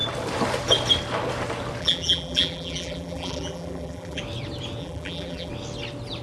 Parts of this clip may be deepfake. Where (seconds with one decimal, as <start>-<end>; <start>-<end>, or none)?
1.8-4.2; 4.8-5.5